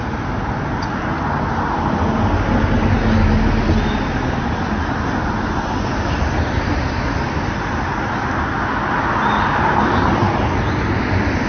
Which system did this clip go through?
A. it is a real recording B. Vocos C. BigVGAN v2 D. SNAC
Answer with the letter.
A